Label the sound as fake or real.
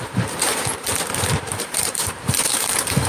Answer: fake